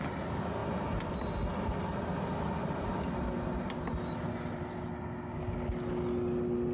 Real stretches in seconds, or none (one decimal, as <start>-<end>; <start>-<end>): 0.0-6.7